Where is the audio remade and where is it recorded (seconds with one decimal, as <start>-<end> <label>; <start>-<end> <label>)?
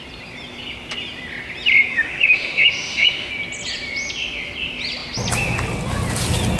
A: 0.0-1.9 recorded; 1.9-3.3 remade; 3.3-6.6 recorded